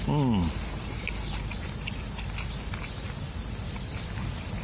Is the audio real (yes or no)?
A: yes